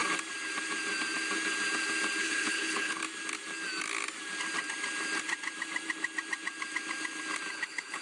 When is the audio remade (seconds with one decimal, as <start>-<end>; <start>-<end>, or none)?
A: 2.2-3.0; 7.5-8.0